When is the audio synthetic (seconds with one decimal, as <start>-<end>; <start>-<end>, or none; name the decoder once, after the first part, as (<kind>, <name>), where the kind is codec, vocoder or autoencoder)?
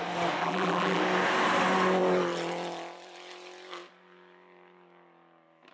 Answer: 0.4-1.0 (vocoder, BigVGAN v2)